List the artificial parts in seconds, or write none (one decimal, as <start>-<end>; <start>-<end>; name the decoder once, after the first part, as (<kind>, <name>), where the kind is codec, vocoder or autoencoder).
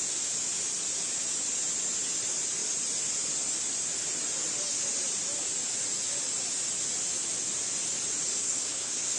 8.4-9.2 (codec, SNAC)